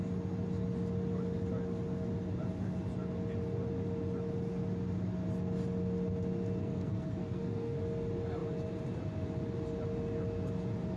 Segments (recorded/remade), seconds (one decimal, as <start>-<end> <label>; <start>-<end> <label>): 0.0-6.6 recorded; 6.6-7.8 remade; 7.8-11.0 recorded